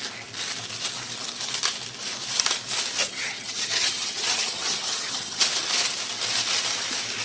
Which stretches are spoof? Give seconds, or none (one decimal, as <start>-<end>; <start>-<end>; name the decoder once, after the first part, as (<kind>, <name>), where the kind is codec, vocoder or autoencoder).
3.0-5.4 (vocoder, HiFi-GAN)